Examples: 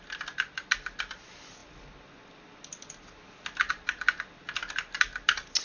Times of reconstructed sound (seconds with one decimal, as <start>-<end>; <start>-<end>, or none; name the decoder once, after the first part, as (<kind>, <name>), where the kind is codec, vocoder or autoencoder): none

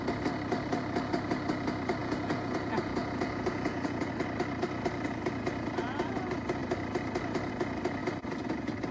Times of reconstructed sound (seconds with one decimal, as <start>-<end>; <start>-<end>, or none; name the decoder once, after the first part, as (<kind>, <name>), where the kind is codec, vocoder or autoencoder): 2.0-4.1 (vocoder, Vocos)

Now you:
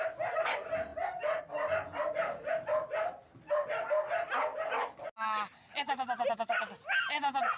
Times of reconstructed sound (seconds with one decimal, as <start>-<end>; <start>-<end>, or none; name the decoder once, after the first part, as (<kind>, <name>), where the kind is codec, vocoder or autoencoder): none

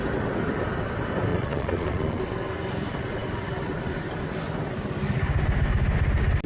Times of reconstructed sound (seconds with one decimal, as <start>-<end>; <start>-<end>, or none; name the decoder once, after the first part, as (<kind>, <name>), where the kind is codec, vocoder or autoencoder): 1.3-2.2 (vocoder, Vocos)

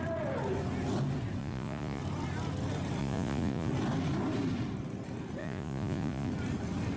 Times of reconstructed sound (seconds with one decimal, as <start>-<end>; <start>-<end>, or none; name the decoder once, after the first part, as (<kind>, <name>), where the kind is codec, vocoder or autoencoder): 1.4-2.0 (vocoder, Vocos); 3.0-3.7; 5.4-6.3